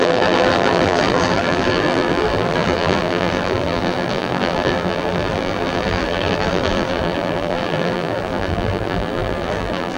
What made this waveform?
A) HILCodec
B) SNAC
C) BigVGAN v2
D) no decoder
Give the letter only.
C